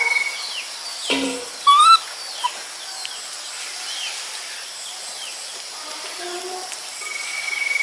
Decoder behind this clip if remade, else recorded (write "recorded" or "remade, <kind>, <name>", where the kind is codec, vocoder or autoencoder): recorded